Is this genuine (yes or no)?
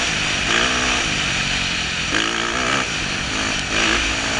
yes